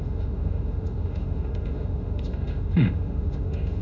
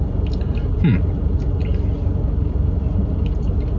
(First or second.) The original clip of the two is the second